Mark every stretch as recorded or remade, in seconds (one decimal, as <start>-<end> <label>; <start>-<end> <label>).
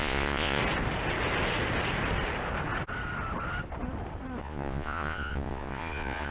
0.0-0.6 remade; 0.6-4.4 recorded; 4.4-6.3 remade